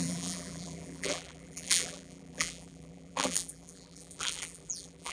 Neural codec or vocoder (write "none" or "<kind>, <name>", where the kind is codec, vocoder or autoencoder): vocoder, BigVGAN v2